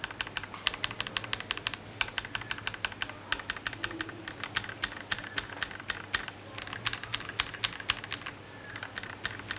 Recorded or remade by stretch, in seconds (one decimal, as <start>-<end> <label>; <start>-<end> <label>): 0.0-9.6 recorded